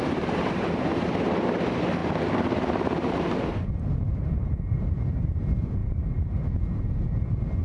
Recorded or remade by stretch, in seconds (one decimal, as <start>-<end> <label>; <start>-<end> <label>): 0.0-2.0 remade; 2.0-4.1 recorded; 4.1-5.8 remade; 5.8-7.6 recorded